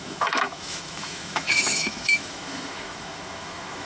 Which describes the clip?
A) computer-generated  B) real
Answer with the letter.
A